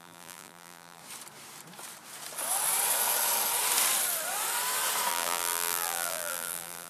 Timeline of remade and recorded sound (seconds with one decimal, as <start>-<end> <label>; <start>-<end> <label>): 0.0-1.0 remade; 1.0-5.1 recorded; 5.1-6.9 remade